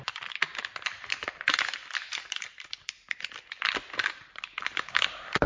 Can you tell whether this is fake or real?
fake